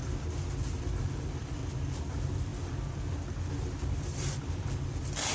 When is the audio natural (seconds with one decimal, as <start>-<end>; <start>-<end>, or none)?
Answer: 0.0-1.0; 1.6-2.1